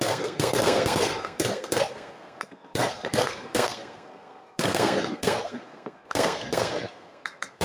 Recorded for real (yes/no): no